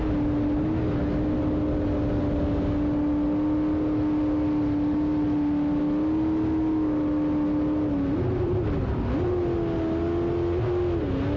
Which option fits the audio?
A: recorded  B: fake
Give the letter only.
A